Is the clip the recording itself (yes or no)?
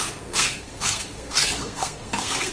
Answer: no